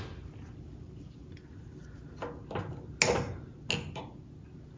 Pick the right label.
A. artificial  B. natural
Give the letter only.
B